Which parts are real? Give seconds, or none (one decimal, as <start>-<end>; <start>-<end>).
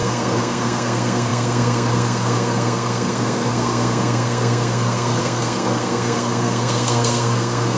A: none